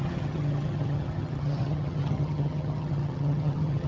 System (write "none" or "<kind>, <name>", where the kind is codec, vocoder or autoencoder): vocoder, HiFi-GAN